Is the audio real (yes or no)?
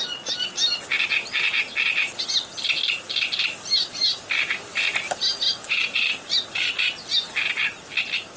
yes